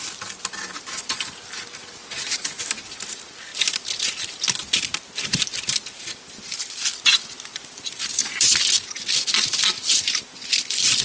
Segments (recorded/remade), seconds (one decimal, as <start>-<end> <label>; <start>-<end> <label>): 0.0-11.0 recorded